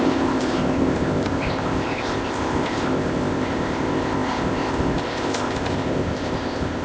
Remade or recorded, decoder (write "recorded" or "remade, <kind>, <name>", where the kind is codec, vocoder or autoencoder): remade, codec, ZipCodec